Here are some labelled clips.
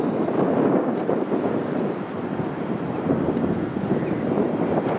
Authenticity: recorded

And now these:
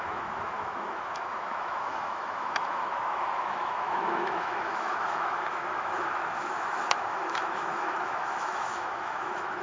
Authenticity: remade